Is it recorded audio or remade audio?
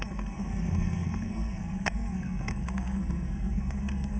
remade